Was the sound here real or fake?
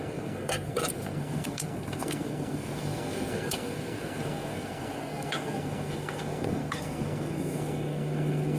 fake